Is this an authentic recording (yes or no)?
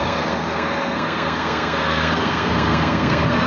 no